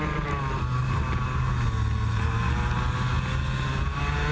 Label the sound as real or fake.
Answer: real